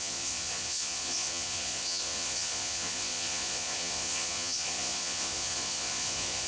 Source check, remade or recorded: remade